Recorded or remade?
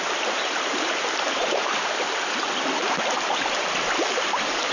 recorded